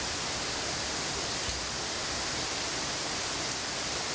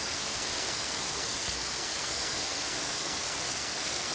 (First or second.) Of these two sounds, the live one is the first